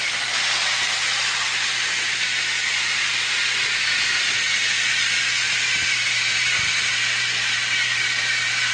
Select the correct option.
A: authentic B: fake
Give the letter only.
A